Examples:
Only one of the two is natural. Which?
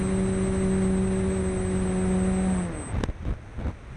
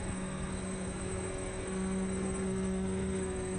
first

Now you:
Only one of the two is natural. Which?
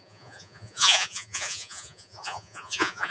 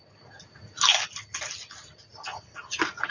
second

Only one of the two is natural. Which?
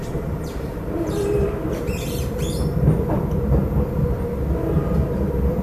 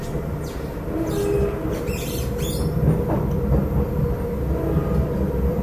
second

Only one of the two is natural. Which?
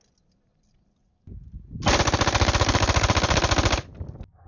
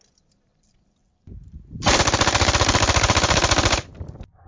first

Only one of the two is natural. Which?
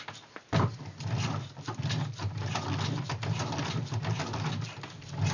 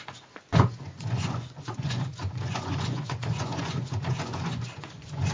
first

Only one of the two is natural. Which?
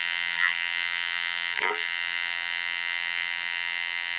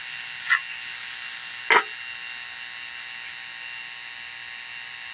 second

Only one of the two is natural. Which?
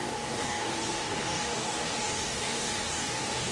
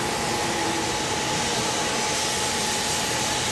second